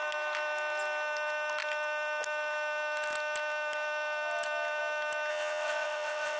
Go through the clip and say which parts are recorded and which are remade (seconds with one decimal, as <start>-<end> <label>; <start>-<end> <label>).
0.0-5.3 recorded; 5.3-6.4 remade